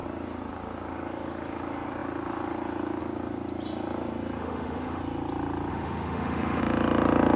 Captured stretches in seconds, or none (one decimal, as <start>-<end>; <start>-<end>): 0.0-4.4; 5.0-5.7; 6.6-7.4